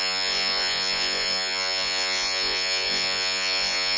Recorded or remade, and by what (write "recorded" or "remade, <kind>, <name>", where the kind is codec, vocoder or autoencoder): remade, vocoder, Vocos